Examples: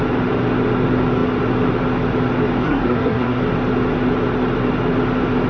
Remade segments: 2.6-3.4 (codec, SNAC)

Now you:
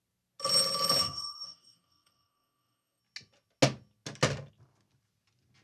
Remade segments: 1.0-3.0 (codec, DAC)

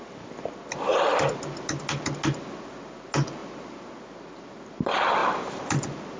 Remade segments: 5.2-5.8 (vocoder, BigVGAN v2)

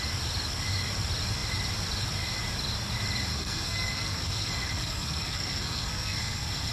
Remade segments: 3.3-6.7 (codec, SNAC)